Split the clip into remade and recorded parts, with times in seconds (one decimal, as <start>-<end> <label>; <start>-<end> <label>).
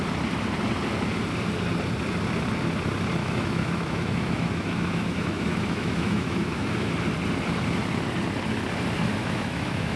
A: 0.0-3.2 recorded; 3.2-6.9 remade; 6.9-9.2 recorded; 9.2-10.0 remade